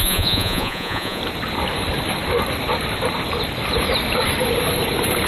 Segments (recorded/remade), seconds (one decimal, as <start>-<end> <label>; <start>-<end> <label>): 0.0-1.2 remade; 1.2-5.3 recorded